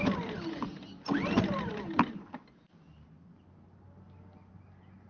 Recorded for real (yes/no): yes